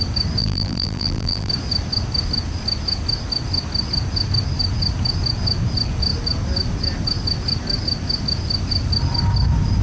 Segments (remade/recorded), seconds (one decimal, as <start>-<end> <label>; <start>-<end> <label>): 0.0-0.4 recorded; 0.4-1.5 remade; 1.5-9.8 recorded